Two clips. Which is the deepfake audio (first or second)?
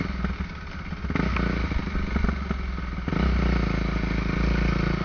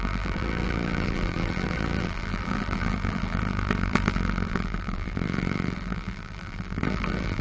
second